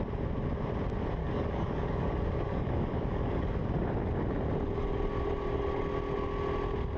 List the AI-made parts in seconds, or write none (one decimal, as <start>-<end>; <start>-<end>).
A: 1.2-3.6

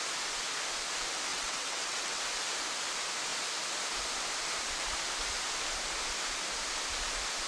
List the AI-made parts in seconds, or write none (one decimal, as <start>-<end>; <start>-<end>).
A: 1.3-2.2

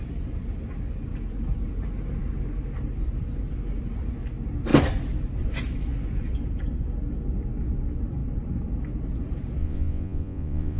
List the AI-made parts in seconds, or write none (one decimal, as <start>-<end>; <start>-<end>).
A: 9.6-10.8